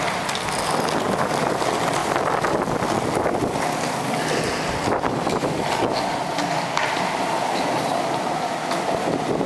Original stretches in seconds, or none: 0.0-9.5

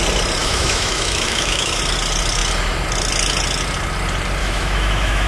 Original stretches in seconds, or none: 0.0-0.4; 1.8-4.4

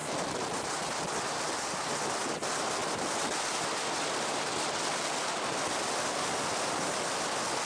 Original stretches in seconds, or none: 0.0-7.6

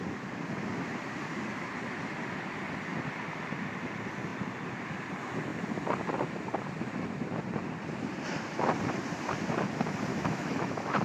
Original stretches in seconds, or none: 0.0-10.1

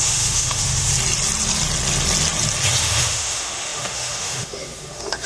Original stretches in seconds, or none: 0.9-2.8